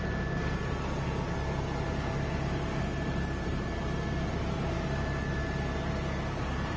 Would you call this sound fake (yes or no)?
no